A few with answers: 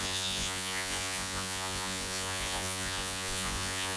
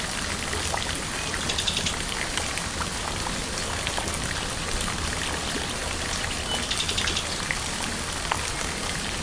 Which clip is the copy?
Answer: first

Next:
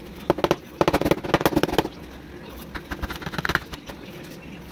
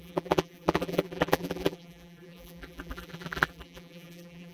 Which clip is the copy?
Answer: second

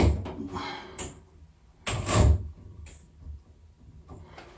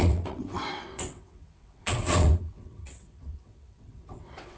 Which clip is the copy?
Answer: second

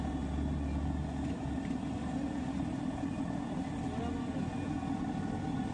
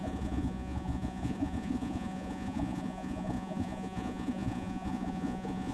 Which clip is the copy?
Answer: second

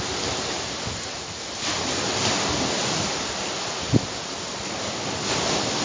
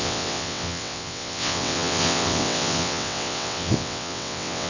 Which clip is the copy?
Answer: second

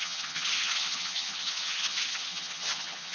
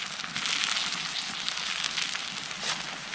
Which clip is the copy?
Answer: first